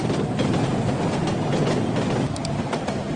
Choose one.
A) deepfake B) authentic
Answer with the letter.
B